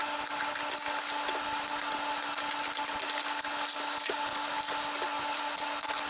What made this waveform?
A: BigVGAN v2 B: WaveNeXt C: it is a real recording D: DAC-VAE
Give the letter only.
C